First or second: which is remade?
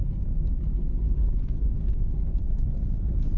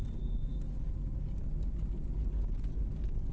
first